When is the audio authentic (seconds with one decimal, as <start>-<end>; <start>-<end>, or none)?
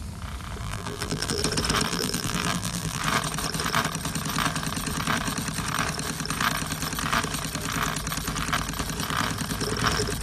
0.0-0.6; 1.4-1.9; 3.0-10.2